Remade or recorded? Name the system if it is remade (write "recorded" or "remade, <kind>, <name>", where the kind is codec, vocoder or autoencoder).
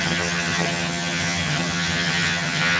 remade, vocoder, HiFi-GAN